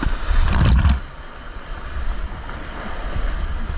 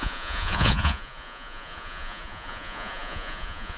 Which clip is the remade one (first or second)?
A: second